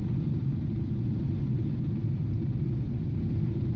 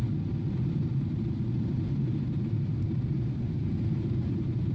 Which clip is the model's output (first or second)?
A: second